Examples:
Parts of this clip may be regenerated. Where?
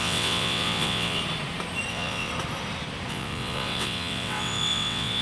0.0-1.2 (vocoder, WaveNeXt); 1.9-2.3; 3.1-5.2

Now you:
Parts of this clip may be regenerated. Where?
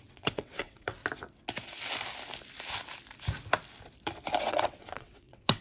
0.0-1.0 (vocoder, WaveNeXt); 4.4-5.6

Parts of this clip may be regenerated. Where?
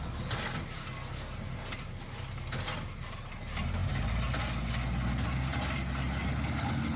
none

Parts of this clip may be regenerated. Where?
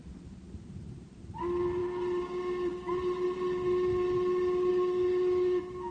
none